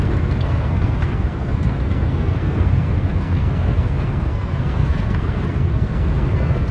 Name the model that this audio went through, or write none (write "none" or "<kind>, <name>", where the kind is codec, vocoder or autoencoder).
codec, SNAC